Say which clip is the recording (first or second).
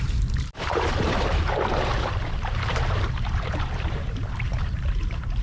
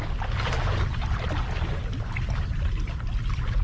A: second